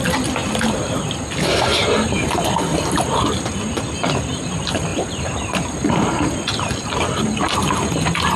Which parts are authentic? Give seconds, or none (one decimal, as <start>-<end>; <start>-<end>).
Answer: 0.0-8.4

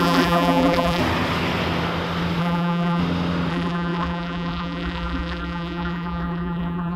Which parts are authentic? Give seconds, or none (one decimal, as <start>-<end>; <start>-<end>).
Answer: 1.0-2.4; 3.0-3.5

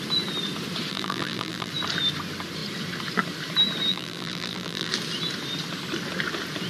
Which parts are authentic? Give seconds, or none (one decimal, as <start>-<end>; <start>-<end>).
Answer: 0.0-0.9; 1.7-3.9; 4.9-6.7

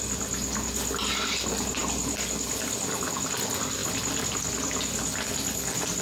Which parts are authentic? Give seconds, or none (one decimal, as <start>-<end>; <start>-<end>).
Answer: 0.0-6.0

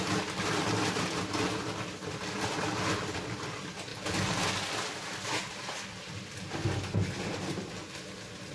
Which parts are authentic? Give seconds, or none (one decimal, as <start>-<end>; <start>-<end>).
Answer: 0.0-3.9; 4.4-8.5

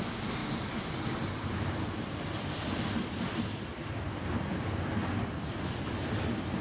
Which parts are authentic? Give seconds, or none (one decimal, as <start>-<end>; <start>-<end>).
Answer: 0.0-0.4; 3.6-6.6